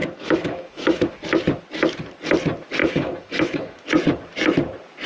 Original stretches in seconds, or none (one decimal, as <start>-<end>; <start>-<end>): 1.1-2.8; 3.9-5.1